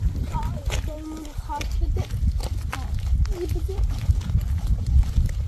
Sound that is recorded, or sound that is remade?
recorded